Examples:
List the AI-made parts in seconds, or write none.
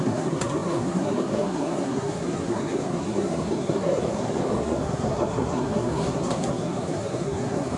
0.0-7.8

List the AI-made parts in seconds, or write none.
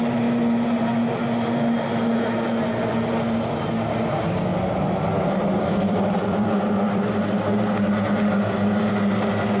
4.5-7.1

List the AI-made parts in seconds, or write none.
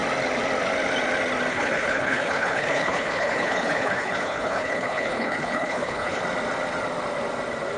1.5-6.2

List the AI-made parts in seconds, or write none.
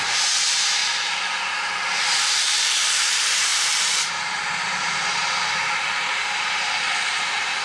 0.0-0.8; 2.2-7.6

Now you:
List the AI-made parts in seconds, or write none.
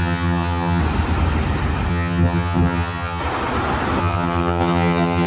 0.0-0.8; 1.9-3.2; 4.0-5.3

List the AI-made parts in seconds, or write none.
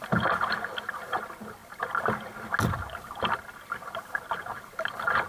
none